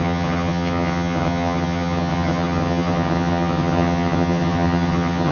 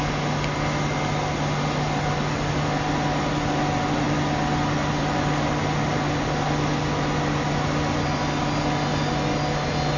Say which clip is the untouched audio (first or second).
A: second